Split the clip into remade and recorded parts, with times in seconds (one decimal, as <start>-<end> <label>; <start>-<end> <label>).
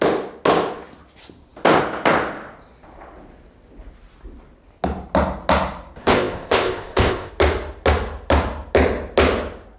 0.0-6.0 recorded; 6.0-7.3 remade; 7.3-9.8 recorded